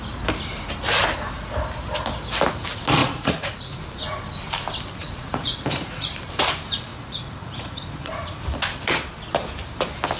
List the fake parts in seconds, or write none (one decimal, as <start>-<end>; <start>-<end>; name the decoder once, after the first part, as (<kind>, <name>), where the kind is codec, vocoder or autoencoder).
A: 3.0-3.8 (vocoder, Vocos); 5.0-6.1; 6.9-8.4